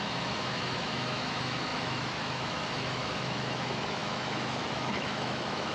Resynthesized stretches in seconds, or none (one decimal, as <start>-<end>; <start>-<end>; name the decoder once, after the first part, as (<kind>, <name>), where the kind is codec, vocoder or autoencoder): 0.0-5.7 (autoencoder, DAC-VAE)